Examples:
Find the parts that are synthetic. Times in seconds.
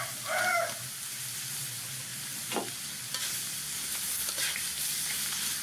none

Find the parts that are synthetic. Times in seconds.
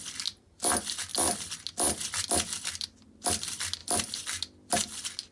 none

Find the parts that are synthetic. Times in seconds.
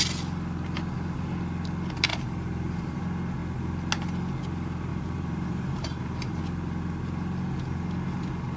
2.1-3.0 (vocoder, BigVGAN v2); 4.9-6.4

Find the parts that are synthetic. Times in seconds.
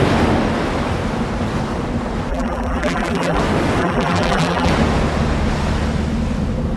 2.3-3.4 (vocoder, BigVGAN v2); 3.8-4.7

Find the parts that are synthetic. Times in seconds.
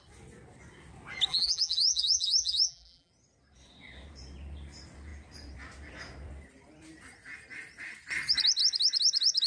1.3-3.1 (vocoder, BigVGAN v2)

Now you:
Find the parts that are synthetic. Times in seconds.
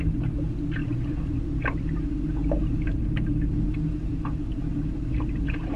0.8-1.4 (vocoder, BigVGAN v2); 2.6-5.8